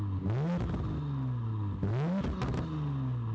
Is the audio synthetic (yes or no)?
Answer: no